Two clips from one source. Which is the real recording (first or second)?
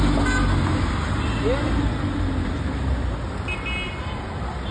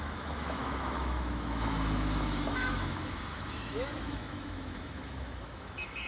first